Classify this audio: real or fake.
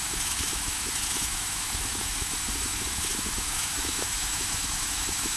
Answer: fake